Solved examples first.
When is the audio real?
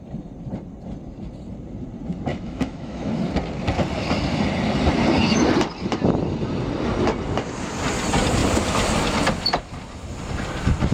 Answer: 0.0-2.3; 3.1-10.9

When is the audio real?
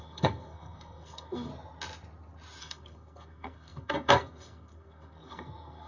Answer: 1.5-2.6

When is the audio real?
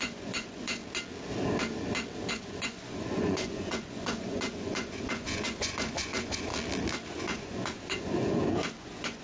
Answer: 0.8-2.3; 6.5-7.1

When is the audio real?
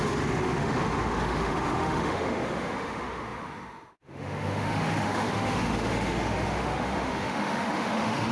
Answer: none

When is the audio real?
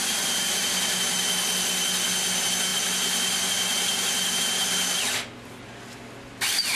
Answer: 0.0-6.8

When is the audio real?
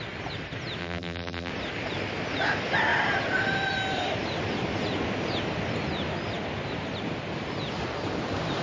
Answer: 0.0-0.8; 1.5-8.6